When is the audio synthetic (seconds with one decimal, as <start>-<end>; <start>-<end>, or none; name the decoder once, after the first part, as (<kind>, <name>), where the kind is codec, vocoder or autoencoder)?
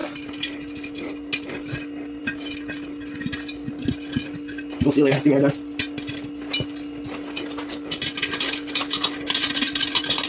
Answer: none